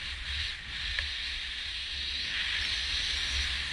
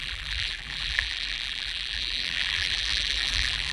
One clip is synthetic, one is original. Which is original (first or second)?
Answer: first